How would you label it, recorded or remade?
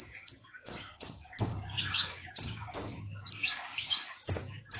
remade